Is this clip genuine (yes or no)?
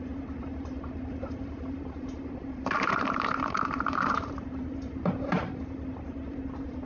no